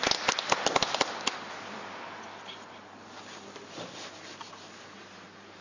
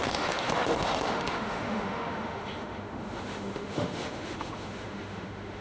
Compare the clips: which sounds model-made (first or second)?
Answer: second